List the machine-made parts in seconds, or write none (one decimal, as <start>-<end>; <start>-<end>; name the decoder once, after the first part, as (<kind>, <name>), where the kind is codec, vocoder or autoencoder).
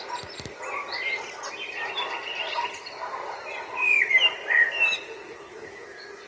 none